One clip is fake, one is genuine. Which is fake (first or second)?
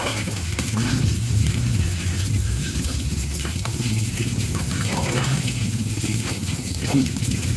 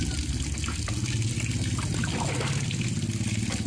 first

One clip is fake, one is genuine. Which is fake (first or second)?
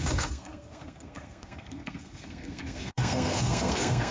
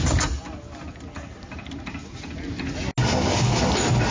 first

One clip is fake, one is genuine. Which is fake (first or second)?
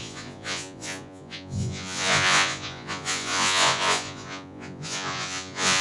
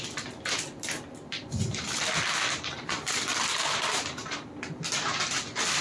first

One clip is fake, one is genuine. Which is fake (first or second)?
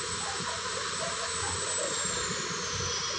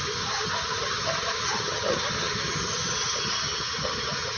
second